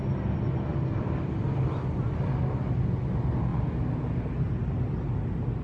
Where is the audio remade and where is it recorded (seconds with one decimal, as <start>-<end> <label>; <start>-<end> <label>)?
0.0-0.7 recorded; 0.7-3.0 remade; 3.0-5.6 recorded